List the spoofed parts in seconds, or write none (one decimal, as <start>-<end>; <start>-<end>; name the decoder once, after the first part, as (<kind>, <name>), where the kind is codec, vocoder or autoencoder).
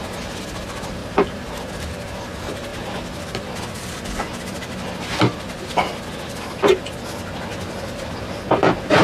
1.0-1.7 (vocoder, BigVGAN v2)